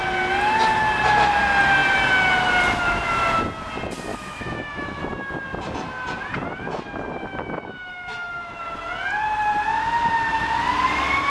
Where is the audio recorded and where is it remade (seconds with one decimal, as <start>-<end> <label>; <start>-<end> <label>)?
0.0-4.1 recorded; 4.1-5.0 remade; 5.0-7.8 recorded; 7.8-8.5 remade; 8.5-11.3 recorded